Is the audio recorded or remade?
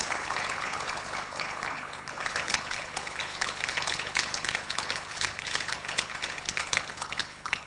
remade